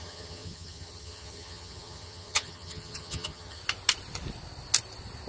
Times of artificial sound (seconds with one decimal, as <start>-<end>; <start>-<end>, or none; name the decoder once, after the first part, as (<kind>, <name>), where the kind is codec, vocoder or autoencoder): 0.0-3.6 (vocoder, HiFi-GAN)